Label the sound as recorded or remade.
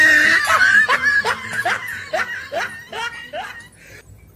recorded